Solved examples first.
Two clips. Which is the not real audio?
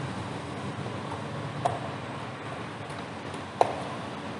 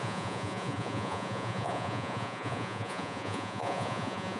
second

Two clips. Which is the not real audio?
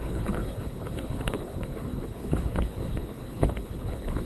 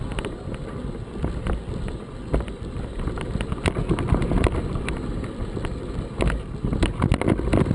first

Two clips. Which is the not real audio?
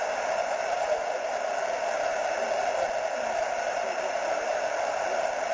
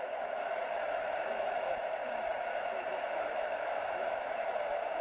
second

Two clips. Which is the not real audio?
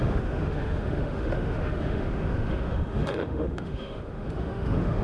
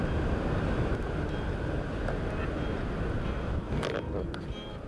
first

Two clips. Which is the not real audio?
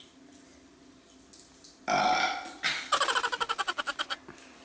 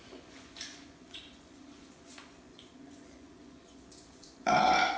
second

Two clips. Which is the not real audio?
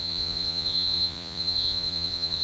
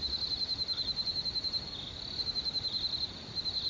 first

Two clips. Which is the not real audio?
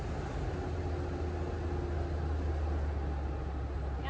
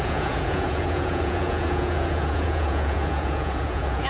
second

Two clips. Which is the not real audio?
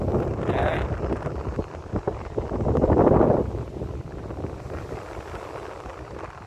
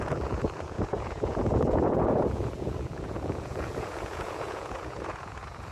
second